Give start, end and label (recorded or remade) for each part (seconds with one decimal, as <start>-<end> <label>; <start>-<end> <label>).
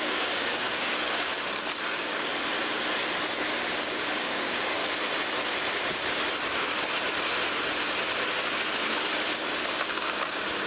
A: 0.0-1.3 remade; 1.3-1.8 recorded; 1.8-2.3 remade; 2.3-3.8 recorded; 3.8-4.8 remade; 4.8-9.7 recorded; 9.7-10.7 remade